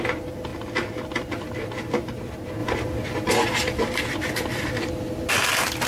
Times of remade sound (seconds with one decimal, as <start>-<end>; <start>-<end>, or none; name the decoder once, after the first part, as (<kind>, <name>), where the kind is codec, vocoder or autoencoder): none